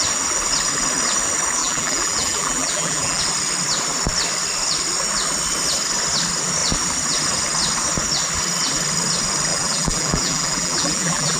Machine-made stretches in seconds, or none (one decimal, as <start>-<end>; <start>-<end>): 1.6-3.2; 9.5-11.4